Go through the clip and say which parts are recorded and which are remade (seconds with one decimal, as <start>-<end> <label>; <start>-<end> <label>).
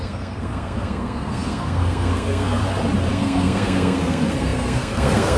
0.0-2.6 remade; 2.6-3.1 recorded; 3.1-5.4 remade